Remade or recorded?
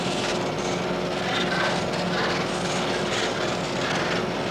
recorded